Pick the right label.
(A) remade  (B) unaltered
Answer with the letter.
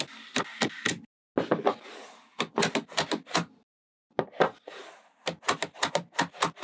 B